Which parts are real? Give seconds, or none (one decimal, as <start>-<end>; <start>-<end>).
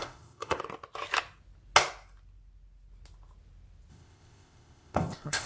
0.6-3.9